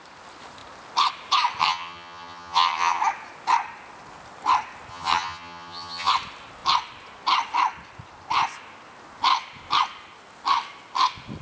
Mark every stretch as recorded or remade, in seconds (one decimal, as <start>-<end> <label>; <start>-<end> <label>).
0.0-1.6 recorded; 1.6-3.0 remade; 3.0-4.9 recorded; 4.9-6.1 remade; 6.1-11.4 recorded